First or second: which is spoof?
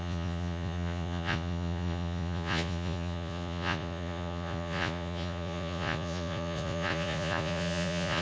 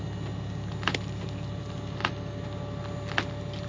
first